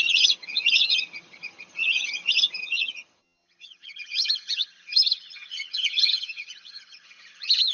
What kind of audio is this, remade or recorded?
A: remade